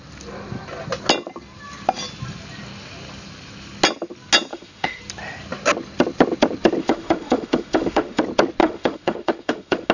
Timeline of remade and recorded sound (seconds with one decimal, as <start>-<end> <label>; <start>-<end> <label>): 0.0-4.5 recorded; 4.5-5.0 remade; 5.0-6.8 recorded; 6.8-8.2 remade; 8.2-8.6 recorded; 8.6-9.9 remade